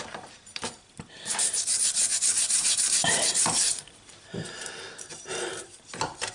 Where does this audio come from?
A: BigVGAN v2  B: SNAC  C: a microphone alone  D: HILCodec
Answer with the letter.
A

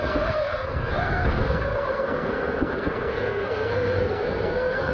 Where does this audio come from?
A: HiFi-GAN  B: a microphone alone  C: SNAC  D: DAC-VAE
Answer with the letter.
C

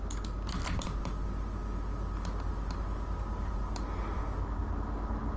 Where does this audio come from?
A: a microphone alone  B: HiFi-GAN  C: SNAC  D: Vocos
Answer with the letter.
A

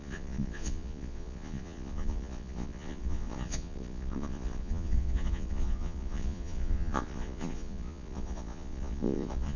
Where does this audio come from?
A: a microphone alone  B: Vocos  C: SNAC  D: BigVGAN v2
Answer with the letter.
B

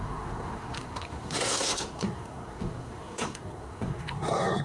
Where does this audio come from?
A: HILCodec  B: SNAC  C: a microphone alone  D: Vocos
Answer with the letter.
B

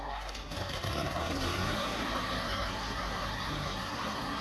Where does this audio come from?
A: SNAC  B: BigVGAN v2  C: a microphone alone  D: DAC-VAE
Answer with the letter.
A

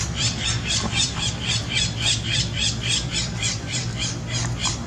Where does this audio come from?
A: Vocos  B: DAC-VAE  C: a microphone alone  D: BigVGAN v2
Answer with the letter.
D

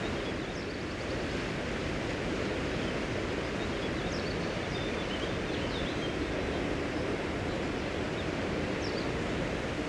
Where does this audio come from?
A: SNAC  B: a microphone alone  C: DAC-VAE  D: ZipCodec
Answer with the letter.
B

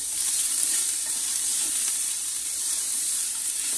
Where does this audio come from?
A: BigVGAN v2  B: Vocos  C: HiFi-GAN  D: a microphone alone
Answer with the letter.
A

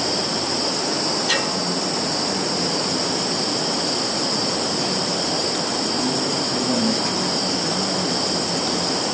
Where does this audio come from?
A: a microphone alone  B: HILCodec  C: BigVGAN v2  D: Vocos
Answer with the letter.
A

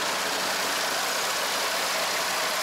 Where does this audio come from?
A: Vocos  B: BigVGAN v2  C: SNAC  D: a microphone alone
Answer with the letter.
D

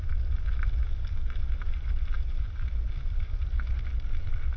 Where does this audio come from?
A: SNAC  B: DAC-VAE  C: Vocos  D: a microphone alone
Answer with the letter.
D